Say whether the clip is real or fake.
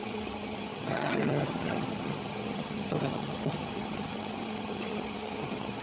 fake